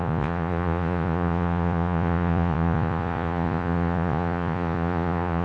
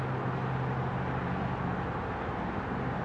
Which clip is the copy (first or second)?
first